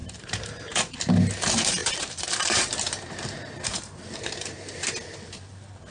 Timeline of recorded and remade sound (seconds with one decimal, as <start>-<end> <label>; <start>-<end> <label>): 0.0-1.0 remade; 1.0-1.8 recorded; 1.8-4.9 remade; 4.9-5.9 recorded